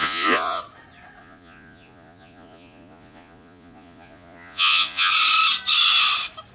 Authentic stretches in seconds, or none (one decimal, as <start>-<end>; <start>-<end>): 0.6-1.2; 5.1-6.5